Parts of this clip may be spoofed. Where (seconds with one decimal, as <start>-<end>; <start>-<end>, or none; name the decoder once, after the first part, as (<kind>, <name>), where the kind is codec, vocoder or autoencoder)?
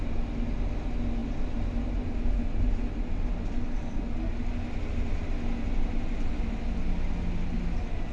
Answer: none